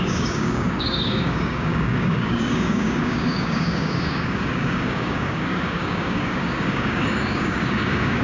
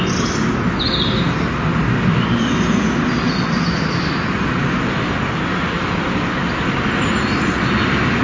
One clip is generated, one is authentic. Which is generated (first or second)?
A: first